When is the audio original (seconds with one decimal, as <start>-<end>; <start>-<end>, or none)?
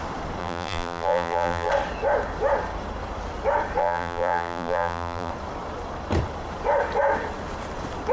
0.0-0.4; 1.7-3.8; 5.3-8.1